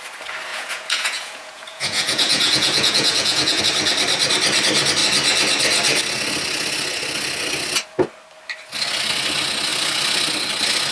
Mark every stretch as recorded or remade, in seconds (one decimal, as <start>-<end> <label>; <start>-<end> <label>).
0.0-0.5 recorded; 0.5-3.6 remade; 3.6-10.9 recorded